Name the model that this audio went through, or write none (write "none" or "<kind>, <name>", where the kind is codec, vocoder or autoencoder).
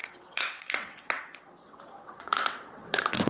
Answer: vocoder, WaveNeXt